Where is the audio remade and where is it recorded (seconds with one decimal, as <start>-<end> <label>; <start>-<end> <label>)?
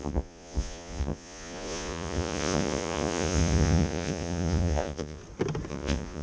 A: 0.0-5.2 remade; 5.2-5.7 recorded; 5.7-6.2 remade